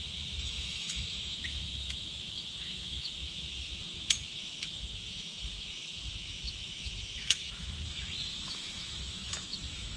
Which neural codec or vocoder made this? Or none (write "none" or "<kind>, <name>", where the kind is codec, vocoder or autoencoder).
autoencoder, DAC-VAE